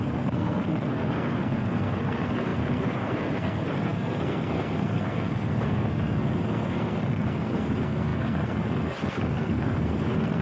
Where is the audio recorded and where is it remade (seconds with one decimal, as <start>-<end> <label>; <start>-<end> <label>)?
0.0-10.4 remade